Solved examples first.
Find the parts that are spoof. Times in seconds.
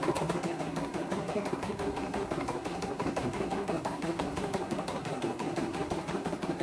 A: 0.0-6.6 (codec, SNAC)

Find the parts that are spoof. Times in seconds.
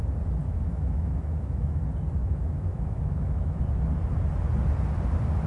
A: 0.4-1.8 (autoencoder, DAC-VAE); 2.2-3.6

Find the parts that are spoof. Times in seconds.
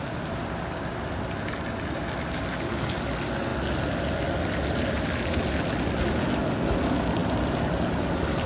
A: none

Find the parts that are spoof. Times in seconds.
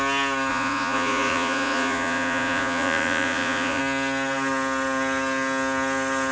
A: 0.5-3.8 (vocoder, Vocos)